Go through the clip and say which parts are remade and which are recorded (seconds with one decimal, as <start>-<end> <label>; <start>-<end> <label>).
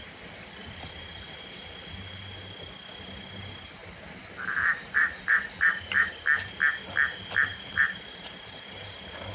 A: 0.0-0.6 recorded; 0.6-2.2 remade; 2.2-3.8 recorded; 3.8-6.1 remade; 6.1-7.5 recorded; 7.5-8.9 remade; 8.9-9.3 recorded